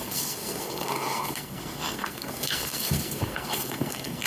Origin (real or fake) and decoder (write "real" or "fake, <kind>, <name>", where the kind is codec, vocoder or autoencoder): fake, codec, SNAC